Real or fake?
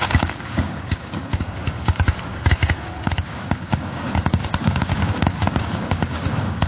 fake